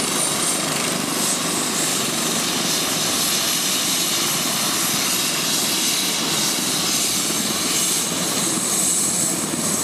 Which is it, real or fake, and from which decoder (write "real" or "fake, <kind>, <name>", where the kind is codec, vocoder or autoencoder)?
real